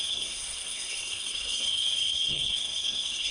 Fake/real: fake